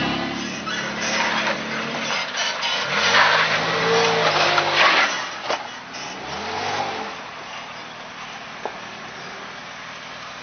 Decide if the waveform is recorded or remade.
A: recorded